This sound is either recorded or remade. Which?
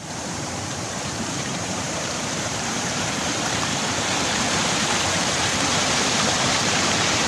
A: remade